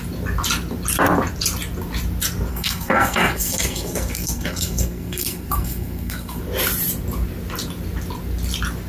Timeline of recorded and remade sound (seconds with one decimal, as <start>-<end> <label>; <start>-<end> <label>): 0.0-2.5 recorded; 2.5-6.4 remade; 6.4-8.9 recorded